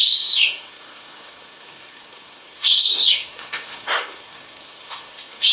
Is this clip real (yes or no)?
no